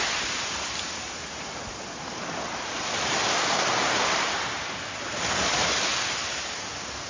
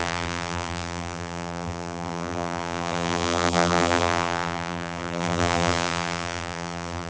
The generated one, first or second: second